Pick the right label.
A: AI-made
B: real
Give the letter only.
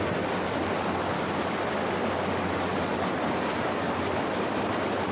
B